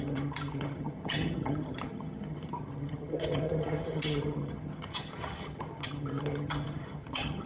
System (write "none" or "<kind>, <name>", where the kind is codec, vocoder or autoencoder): vocoder, HiFi-GAN